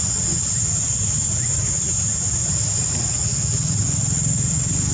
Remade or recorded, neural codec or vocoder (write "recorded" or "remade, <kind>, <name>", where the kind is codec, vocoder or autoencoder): recorded